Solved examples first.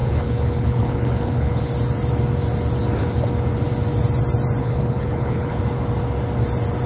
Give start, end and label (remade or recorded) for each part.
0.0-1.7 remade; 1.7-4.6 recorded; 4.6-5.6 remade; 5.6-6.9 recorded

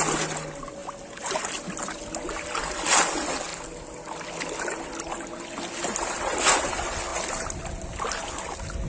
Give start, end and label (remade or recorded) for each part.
0.0-8.9 recorded